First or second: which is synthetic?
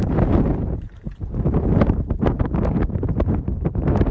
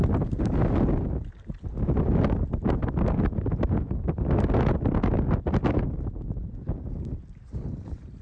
first